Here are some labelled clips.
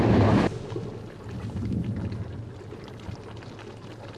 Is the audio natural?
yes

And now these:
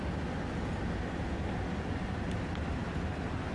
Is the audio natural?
yes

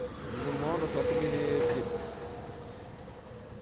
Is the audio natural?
yes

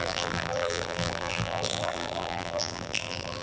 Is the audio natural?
no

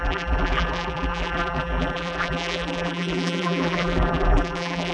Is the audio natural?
no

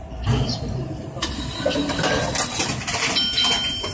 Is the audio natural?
no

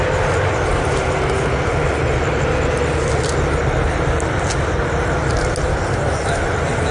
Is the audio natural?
yes